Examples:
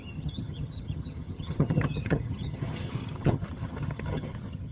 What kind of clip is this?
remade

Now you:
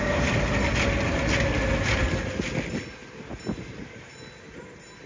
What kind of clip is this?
recorded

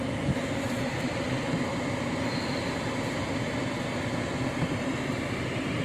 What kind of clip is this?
recorded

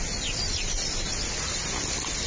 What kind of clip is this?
recorded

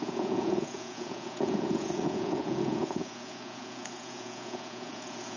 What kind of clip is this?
remade